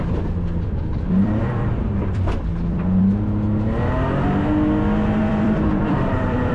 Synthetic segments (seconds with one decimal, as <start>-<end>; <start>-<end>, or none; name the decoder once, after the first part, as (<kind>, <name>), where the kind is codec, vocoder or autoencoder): 0.9-3.0 (vocoder, BigVGAN v2); 5.2-6.5